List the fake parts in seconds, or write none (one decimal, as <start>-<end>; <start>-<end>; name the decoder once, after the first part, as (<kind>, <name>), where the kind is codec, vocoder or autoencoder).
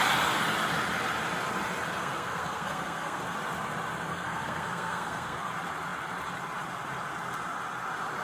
2.0-3.2 (codec, SNAC); 4.1-5.5